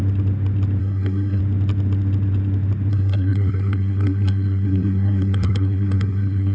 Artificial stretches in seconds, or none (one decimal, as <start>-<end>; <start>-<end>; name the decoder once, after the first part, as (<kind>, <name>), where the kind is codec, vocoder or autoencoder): 0.8-1.4 (codec, SNAC); 2.9-6.5